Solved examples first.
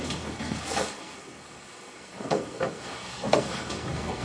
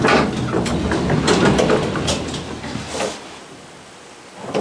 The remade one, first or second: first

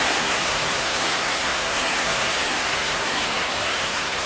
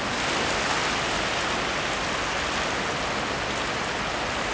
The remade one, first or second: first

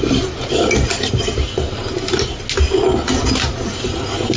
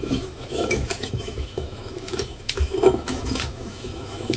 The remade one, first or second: second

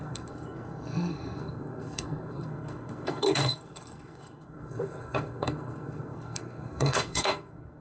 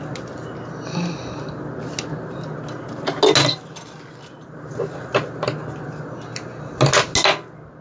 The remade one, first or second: first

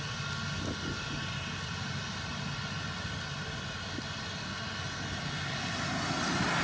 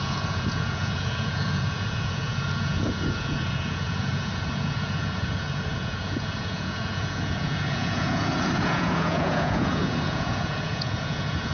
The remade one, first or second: second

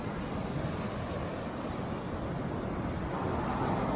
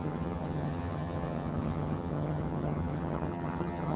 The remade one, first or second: second